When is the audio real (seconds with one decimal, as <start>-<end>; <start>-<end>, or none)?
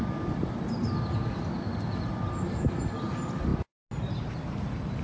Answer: 0.0-5.0